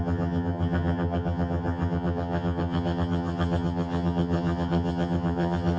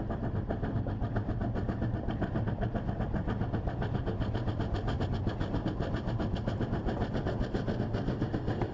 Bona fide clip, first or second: second